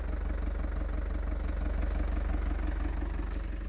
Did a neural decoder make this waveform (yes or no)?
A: no